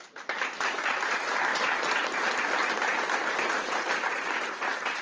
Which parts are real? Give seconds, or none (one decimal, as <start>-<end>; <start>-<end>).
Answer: none